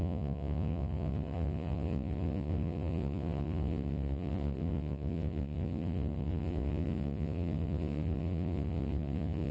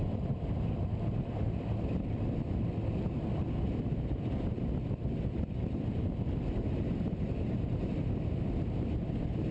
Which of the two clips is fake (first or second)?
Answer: first